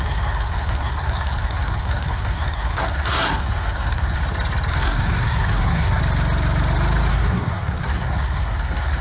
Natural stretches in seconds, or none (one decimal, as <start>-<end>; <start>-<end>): 4.2-4.7; 6.0-7.1